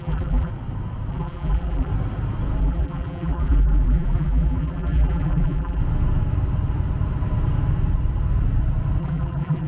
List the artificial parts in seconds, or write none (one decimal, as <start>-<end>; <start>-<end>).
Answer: 0.0-0.5; 1.1-1.9; 2.6-5.8; 9.0-9.7